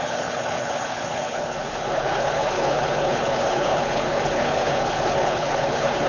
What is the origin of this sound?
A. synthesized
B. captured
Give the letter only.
A